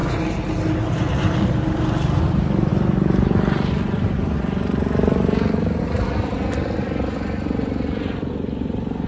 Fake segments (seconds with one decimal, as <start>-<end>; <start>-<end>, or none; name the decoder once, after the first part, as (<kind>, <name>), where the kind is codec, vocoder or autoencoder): none

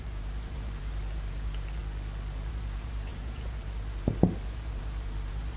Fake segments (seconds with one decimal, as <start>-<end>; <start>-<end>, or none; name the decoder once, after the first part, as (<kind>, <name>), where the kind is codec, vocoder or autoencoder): 0.0-1.8 (vocoder, BigVGAN v2); 2.5-5.6

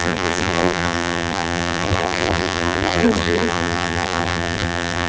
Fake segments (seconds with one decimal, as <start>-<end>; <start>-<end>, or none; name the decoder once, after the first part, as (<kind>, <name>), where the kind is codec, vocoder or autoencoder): 0.0-5.1 (vocoder, BigVGAN v2)

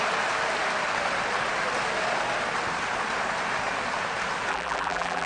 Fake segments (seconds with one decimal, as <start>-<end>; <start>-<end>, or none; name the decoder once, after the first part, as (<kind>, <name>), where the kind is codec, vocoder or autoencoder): 4.5-5.3 (vocoder, BigVGAN v2)

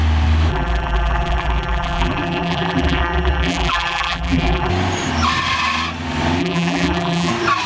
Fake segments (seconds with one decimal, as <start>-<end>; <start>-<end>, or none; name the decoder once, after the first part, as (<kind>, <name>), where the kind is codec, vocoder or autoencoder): 0.5-4.7 (vocoder, BigVGAN v2); 6.4-7.3

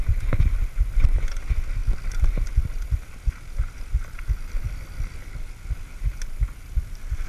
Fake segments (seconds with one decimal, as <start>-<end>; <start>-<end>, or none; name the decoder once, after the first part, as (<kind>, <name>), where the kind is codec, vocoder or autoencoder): none

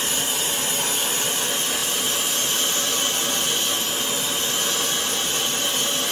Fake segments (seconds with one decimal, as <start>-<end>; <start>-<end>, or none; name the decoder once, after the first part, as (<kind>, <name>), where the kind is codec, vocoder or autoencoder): none

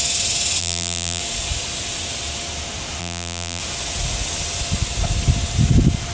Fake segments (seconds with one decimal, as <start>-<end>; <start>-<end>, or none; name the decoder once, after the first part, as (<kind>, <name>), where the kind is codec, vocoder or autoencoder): 0.6-1.2 (vocoder, BigVGAN v2); 3.0-3.6